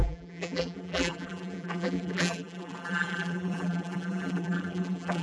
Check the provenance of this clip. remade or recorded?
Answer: remade